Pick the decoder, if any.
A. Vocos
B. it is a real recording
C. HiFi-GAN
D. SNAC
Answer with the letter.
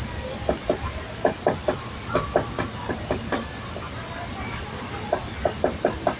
B